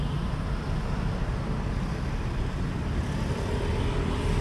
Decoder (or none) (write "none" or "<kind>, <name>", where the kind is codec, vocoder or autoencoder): none